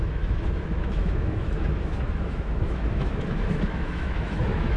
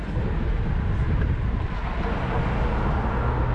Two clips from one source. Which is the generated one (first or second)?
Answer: first